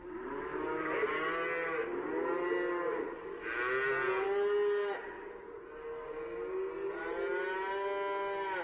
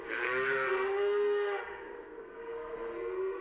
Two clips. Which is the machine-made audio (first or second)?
second